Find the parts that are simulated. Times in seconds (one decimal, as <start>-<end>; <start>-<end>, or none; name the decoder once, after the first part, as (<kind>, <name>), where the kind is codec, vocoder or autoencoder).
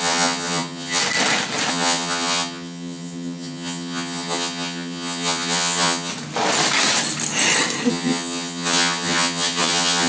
0.0-1.0 (vocoder, HiFi-GAN); 1.7-6.1; 7.9-10.1